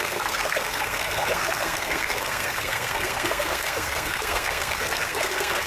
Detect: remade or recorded remade